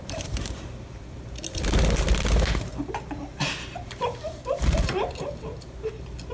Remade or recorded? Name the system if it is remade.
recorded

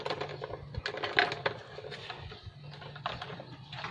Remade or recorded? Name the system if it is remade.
recorded